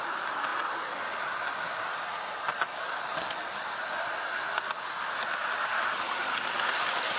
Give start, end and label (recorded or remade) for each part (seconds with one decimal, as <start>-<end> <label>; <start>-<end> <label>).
0.0-0.5 recorded; 0.5-1.2 remade; 1.2-7.2 recorded